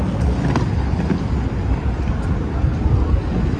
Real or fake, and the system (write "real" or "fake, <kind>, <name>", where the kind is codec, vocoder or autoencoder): real